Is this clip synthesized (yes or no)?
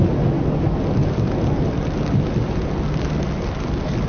no